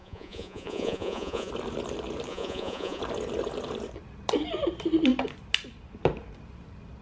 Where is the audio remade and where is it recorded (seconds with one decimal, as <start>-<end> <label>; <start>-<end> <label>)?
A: 0.0-1.5 remade; 1.5-2.3 recorded; 2.3-3.0 remade; 3.0-7.0 recorded